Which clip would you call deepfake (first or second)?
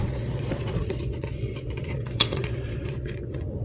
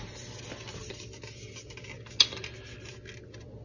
first